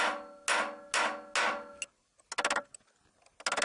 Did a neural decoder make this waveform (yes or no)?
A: no